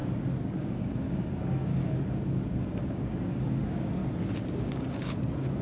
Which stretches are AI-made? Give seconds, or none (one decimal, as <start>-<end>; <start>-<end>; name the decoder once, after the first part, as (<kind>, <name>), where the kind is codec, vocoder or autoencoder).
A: 0.5-4.0 (codec, DAC); 4.5-5.6